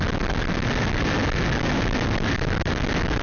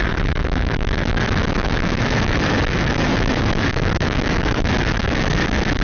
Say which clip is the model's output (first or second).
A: second